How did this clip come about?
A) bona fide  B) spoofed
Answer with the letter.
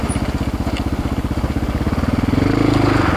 A